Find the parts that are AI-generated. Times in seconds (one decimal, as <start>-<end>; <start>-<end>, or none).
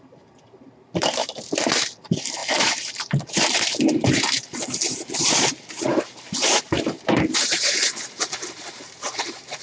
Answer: 0.0-1.2; 2.0-9.6